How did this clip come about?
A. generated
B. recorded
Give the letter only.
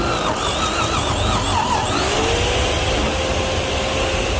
B